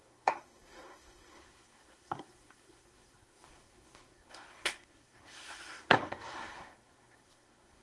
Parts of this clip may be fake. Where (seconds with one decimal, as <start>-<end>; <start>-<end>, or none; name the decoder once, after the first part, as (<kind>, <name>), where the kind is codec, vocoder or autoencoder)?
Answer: 0.0-7.8 (codec, SNAC)